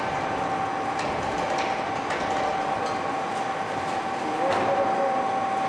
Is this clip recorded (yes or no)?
yes